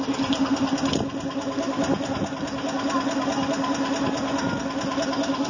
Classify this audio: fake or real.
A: real